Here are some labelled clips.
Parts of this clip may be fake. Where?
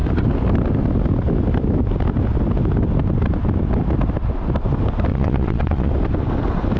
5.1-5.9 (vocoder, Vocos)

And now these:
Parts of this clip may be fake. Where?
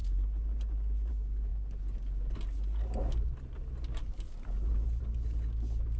none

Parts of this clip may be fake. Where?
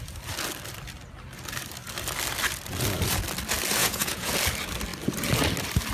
3.8-4.3 (vocoder, Vocos)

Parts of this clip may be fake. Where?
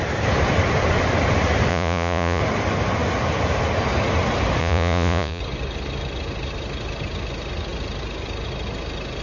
1.7-2.4 (vocoder, Vocos); 4.6-5.4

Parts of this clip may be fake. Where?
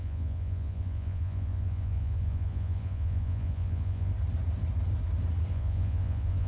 0.0-4.1 (vocoder, Vocos); 5.5-6.5